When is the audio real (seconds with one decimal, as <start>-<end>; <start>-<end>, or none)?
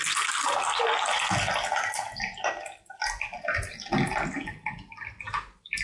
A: 0.0-5.8